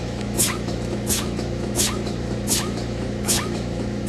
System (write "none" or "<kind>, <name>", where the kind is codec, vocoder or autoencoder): autoencoder, DAC-VAE